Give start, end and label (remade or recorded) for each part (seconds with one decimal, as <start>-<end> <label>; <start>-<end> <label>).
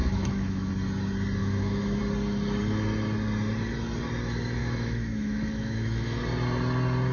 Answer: 0.0-0.7 remade; 0.7-1.4 recorded; 1.4-2.0 remade; 2.0-4.6 recorded; 4.6-6.2 remade; 6.2-7.1 recorded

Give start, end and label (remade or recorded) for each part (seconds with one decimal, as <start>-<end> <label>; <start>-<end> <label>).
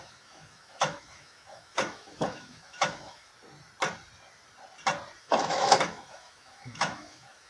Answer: 0.0-3.3 remade; 3.3-5.2 recorded; 5.2-7.5 remade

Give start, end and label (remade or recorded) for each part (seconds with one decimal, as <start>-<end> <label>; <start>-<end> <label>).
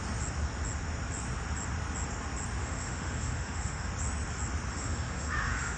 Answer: 0.0-2.6 recorded; 2.6-3.9 remade; 3.9-4.7 recorded; 4.7-5.8 remade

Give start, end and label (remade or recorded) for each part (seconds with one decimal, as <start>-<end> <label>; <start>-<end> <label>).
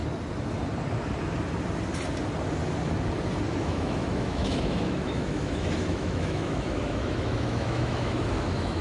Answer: 0.0-3.6 recorded; 3.6-8.8 remade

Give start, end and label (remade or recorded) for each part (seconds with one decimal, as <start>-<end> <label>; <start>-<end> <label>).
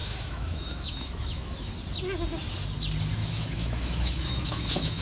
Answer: 0.0-1.7 remade; 1.7-3.2 recorded; 3.2-5.0 remade